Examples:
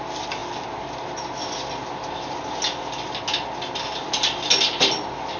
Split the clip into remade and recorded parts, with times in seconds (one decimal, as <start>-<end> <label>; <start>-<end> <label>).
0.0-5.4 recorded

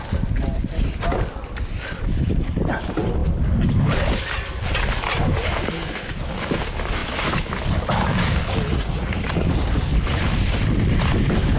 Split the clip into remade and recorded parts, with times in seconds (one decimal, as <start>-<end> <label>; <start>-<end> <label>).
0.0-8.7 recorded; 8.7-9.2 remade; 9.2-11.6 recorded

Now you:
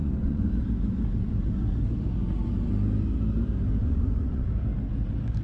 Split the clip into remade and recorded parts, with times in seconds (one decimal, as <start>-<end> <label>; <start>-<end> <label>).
0.0-0.5 remade; 0.5-3.8 recorded; 3.8-4.5 remade; 4.5-5.4 recorded